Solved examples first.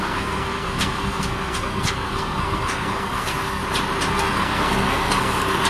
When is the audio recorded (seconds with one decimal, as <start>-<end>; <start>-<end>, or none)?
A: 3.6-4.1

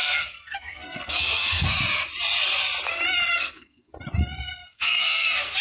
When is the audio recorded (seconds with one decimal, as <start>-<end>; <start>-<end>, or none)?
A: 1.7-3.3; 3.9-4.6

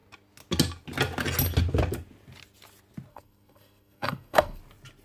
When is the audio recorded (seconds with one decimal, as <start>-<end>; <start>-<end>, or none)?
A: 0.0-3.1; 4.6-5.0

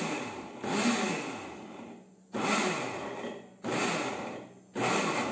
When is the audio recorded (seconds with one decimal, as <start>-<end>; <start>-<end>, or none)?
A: 0.0-5.3